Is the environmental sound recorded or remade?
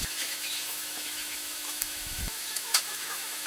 remade